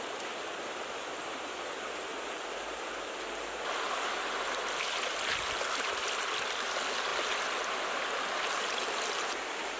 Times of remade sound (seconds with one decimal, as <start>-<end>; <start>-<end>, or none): none